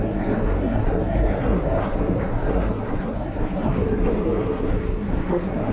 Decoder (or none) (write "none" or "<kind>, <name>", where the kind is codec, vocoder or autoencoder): codec, SNAC